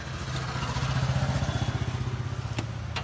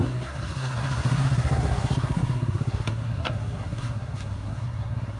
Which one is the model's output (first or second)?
second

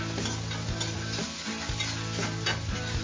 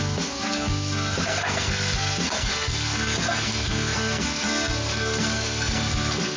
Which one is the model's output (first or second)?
second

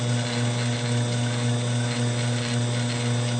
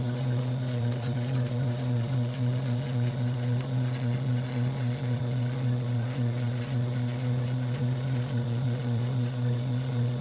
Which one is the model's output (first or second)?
second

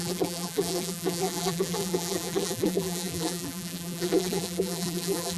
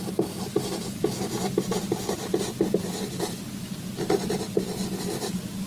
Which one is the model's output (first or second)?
first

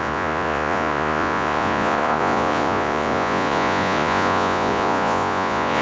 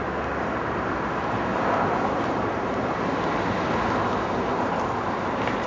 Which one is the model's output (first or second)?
first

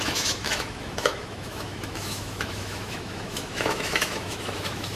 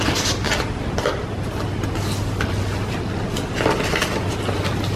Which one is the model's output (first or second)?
first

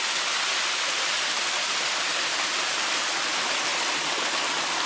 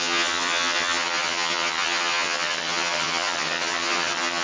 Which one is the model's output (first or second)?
second